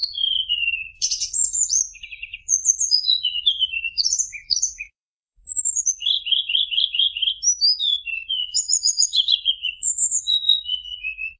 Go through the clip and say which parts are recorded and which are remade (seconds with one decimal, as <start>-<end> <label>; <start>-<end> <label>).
0.0-7.2 remade; 7.2-7.8 recorded; 7.8-11.4 remade